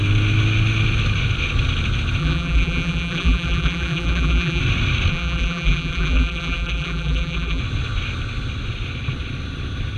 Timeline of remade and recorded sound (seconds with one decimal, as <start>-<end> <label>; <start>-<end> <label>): 0.0-2.2 recorded; 2.2-4.6 remade; 4.6-5.1 recorded; 5.1-7.6 remade; 7.6-10.0 recorded